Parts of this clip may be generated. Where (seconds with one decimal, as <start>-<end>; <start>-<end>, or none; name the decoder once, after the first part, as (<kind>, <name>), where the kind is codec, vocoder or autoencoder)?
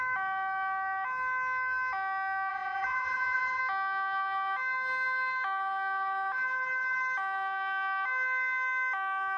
2.5-3.6 (vocoder, Vocos)